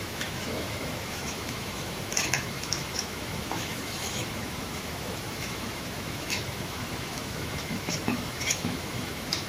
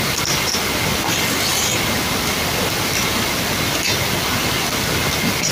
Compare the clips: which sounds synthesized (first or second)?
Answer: first